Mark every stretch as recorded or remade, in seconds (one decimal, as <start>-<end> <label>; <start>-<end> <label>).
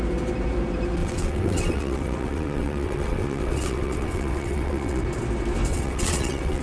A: 0.0-1.0 recorded; 1.0-5.0 remade; 5.0-5.7 recorded; 5.7-6.6 remade